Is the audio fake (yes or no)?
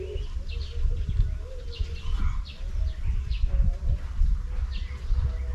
no